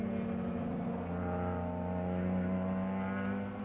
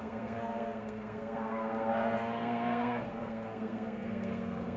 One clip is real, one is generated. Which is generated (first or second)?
second